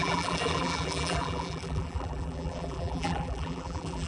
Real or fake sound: fake